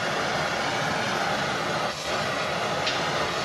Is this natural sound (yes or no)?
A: yes